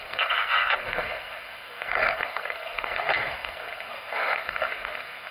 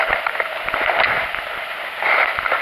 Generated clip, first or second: first